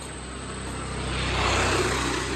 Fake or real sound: real